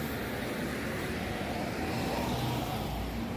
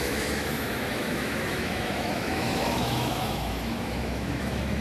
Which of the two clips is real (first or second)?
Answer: first